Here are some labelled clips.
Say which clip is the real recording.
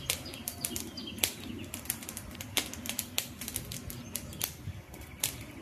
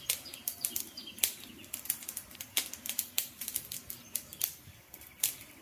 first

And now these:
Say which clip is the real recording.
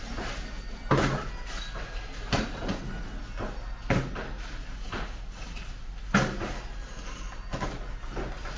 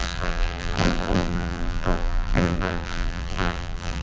first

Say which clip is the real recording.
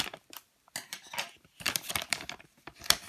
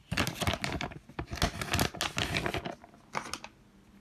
second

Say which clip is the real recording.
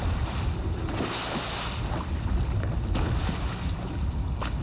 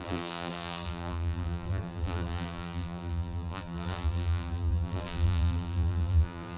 first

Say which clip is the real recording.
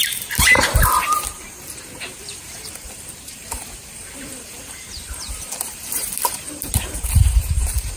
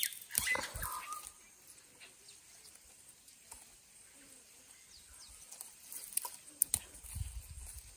second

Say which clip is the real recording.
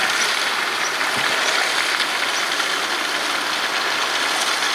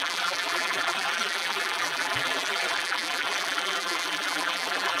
first